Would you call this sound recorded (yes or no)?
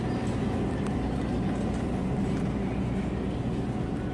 yes